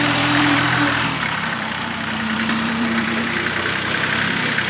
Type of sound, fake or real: fake